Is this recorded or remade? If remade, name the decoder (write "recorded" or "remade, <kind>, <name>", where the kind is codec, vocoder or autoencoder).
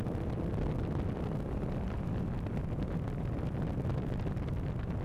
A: recorded